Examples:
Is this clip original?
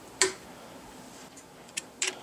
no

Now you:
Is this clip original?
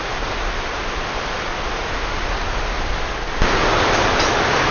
yes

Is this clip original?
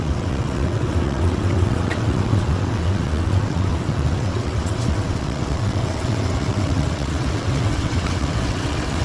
no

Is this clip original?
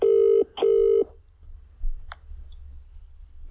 yes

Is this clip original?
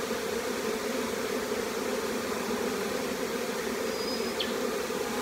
yes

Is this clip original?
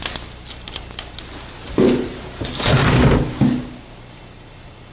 yes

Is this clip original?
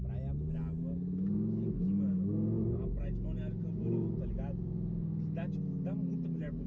yes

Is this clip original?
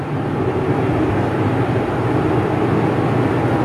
yes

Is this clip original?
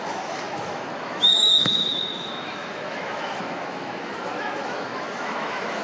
no